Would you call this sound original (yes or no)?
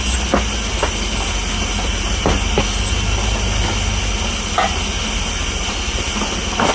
yes